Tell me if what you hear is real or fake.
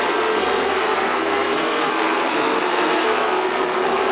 fake